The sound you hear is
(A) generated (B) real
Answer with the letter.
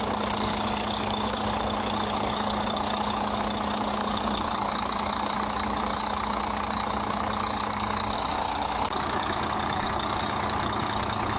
A